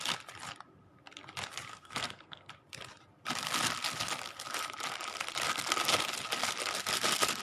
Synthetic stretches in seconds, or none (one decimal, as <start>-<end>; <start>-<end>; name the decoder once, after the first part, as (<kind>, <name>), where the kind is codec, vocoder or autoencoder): 1.7-2.5 (codec, SNAC)